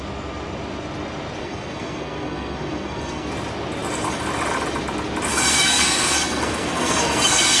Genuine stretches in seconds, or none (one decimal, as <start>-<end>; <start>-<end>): 0.0-1.4; 3.3-5.3